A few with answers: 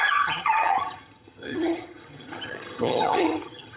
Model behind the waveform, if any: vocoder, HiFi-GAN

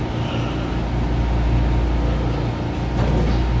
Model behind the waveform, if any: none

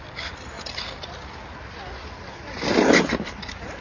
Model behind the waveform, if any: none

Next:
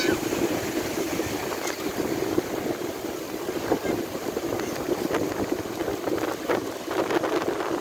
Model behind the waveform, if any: none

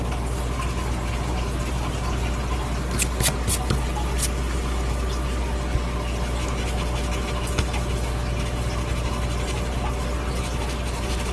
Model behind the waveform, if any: none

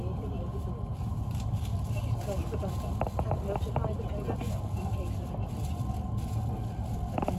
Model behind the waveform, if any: none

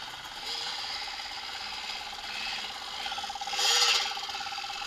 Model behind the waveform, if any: none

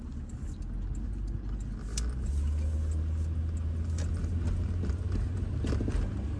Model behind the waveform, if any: none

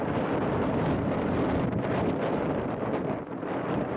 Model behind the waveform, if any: none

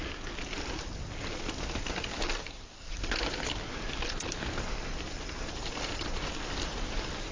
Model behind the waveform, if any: none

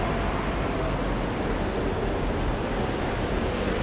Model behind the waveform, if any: none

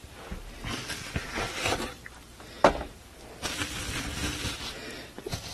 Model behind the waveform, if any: vocoder, BigVGAN v2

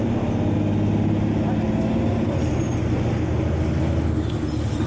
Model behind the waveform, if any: none